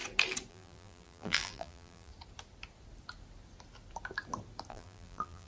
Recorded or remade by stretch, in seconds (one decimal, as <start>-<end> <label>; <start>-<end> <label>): 0.0-0.5 recorded; 0.5-2.1 remade; 2.1-4.7 recorded; 4.7-5.5 remade